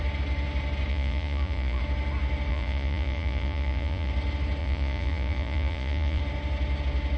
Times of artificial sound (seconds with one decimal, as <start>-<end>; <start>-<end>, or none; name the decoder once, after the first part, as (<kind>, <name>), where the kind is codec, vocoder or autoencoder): 0.9-1.8 (vocoder, Vocos); 2.5-4.1; 4.6-6.2